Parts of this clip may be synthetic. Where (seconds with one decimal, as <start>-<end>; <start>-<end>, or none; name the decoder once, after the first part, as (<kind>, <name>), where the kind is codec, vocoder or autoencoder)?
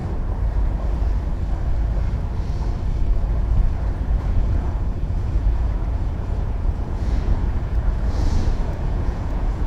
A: 4.1-9.7 (vocoder, Vocos)